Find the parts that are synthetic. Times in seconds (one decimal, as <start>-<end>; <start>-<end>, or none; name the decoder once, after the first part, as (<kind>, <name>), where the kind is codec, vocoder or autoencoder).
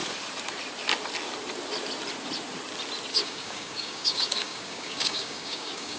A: 3.1-6.0 (codec, DAC)